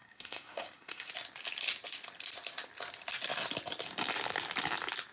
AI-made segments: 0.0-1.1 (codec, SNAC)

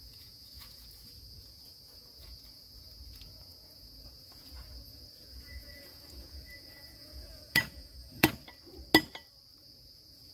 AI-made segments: 0.0-8.3 (vocoder, Vocos); 9.6-10.3